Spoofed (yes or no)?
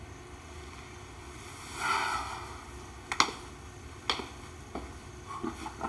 no